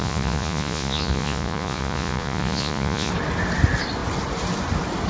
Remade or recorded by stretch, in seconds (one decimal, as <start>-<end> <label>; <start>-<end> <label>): 0.0-3.1 remade; 3.1-5.1 recorded